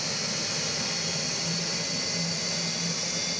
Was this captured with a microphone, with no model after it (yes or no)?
yes